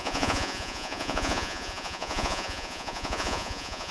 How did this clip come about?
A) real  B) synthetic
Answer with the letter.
B